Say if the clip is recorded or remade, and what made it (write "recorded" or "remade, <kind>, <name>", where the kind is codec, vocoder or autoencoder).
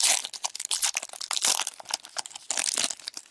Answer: recorded